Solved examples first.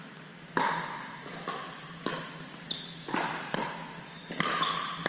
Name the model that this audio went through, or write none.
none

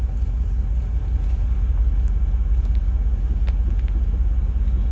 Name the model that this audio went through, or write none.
none